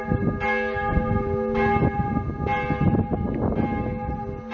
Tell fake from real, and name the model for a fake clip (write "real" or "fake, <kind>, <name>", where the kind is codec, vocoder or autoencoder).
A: real